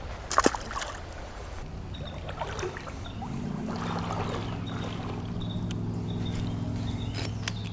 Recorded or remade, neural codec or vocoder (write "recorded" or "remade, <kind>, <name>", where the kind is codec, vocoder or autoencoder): recorded